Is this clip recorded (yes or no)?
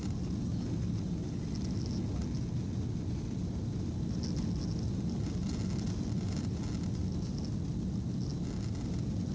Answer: yes